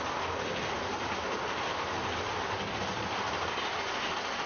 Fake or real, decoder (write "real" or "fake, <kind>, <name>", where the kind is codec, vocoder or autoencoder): real